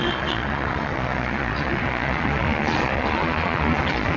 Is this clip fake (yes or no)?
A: yes